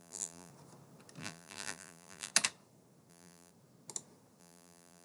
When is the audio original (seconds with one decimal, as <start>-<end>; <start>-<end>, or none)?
0.5-1.2; 2.3-3.1; 3.5-4.4

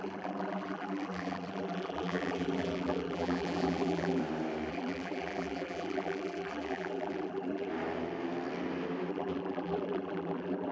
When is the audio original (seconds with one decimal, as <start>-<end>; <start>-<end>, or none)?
4.2-4.7; 7.7-9.1

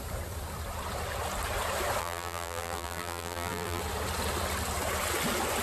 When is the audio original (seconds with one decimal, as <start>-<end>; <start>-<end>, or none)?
0.0-2.0; 3.8-5.6

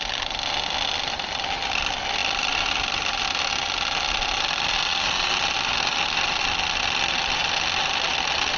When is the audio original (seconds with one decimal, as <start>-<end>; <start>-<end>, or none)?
0.0-8.6

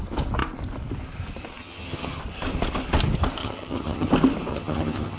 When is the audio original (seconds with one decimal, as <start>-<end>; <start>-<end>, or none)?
0.0-1.6; 2.2-3.4; 4.1-4.5